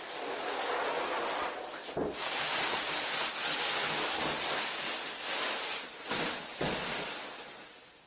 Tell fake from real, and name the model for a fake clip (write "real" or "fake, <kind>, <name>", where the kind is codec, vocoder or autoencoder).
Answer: real